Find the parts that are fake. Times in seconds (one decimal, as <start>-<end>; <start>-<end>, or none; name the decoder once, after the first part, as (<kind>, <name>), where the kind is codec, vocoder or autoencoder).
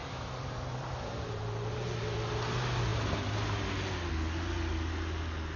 0.0-1.7 (vocoder, BigVGAN v2)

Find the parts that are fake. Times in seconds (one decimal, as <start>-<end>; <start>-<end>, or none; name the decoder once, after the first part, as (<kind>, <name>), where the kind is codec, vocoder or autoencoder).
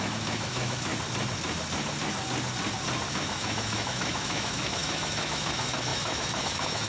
0.0-0.9 (autoencoder, DAC-VAE); 3.1-6.9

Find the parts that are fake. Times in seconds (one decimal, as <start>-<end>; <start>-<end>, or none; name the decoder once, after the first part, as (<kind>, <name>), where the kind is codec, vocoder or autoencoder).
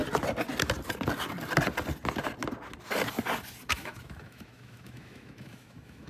3.7-6.1 (autoencoder, DAC-VAE)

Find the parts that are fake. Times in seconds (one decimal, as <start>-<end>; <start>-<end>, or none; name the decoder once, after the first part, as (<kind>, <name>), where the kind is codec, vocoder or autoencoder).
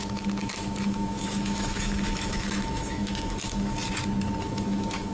0.0-3.8 (autoencoder, DAC-VAE); 4.4-5.1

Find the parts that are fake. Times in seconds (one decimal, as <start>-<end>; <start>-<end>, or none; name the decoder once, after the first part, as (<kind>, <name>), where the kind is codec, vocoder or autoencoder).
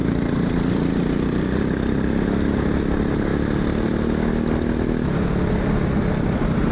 0.0-3.3 (vocoder, BigVGAN v2); 5.5-6.7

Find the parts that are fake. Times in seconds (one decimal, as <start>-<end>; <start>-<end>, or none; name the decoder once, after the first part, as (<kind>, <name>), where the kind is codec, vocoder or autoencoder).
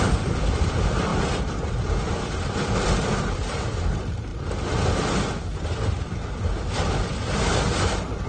0.0-1.1 (vocoder, BigVGAN v2); 2.1-4.3; 7.8-8.3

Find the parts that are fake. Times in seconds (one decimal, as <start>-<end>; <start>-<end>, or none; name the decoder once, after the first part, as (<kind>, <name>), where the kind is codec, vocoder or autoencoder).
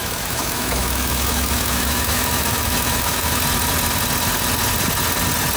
0.0-3.4 (autoencoder, DAC-VAE)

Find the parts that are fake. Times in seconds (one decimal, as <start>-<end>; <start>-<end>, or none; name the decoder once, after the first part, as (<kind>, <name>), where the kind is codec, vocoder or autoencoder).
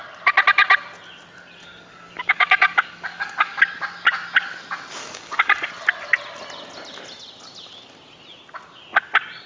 1.6-3.6 (codec, DAC); 5.0-5.7